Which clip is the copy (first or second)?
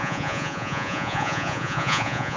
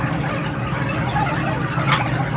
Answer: first